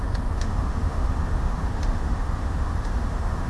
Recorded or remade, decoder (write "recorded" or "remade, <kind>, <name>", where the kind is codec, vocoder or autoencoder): remade, autoencoder, DAC-VAE